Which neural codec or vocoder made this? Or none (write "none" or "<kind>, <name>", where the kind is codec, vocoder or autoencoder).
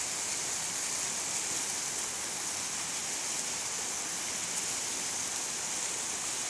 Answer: none